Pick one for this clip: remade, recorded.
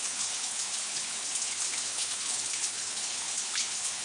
remade